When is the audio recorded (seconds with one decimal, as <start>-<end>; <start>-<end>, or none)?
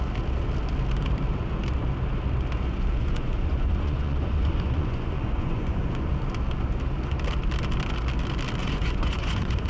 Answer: 0.0-3.0; 6.1-8.6